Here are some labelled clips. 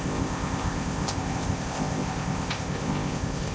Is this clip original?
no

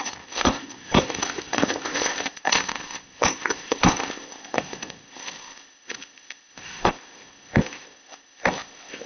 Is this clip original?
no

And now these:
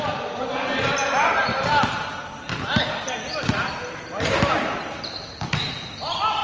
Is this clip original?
yes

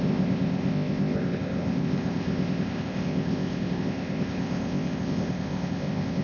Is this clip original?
no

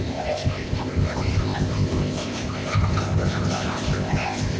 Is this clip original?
no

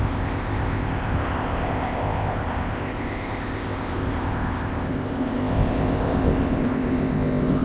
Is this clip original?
no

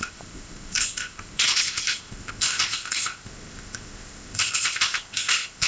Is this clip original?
no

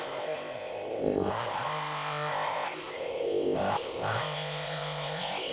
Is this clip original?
no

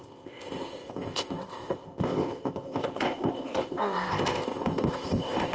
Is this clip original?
no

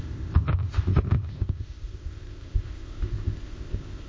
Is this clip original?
no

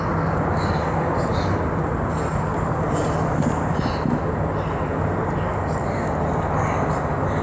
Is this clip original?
yes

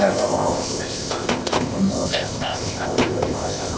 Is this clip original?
no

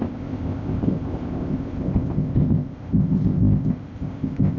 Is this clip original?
no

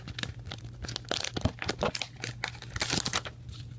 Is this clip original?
yes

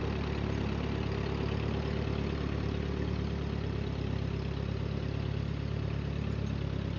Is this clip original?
yes